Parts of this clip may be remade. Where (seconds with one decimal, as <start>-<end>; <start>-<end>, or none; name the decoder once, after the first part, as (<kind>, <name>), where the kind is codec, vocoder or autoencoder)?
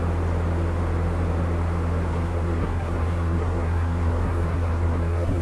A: 2.1-5.4 (codec, SNAC)